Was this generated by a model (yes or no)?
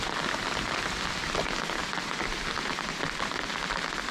no